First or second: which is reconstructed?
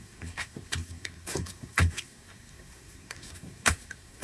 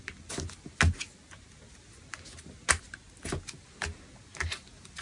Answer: first